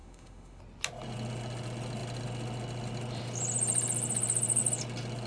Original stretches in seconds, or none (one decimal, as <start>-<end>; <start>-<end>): 0.6-5.3